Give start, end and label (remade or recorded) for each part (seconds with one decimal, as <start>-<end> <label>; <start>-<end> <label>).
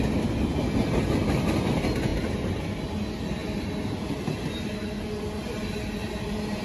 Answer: 0.0-2.1 recorded; 2.1-2.6 remade; 2.6-6.6 recorded